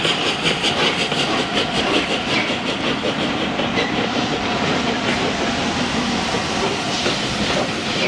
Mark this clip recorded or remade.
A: remade